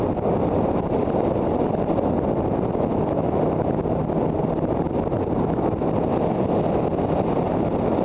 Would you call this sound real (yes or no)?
yes